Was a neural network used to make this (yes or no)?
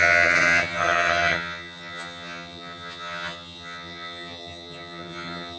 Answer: yes